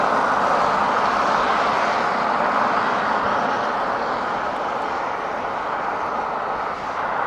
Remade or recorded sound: recorded